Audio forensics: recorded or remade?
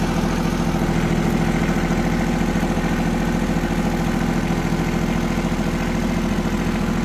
recorded